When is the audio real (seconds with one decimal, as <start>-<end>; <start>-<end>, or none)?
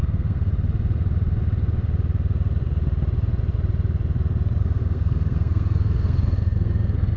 0.5-4.6